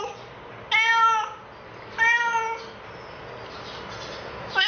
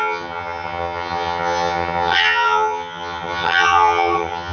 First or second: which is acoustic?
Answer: first